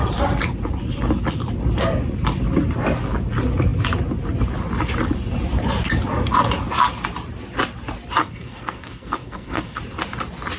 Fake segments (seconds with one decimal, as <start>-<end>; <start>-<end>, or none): 8.2-9.8